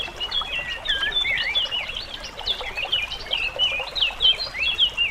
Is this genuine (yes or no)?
yes